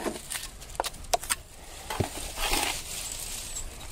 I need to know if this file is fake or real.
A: real